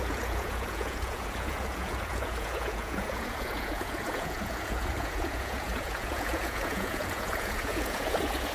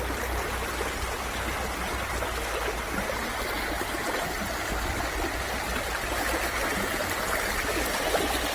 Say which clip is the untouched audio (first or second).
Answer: second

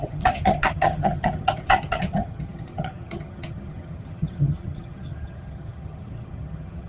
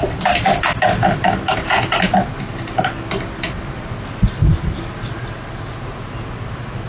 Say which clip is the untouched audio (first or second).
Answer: second